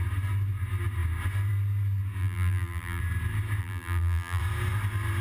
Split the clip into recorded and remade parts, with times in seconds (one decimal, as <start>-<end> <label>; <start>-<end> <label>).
0.0-2.2 recorded; 2.2-3.0 remade; 3.0-3.6 recorded; 3.6-4.4 remade; 4.4-5.2 recorded